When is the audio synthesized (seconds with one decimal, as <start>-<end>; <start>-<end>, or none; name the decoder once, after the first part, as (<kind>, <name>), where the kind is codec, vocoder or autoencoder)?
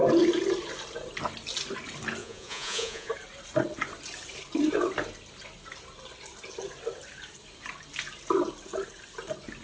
2.2-3.1 (vocoder, Vocos)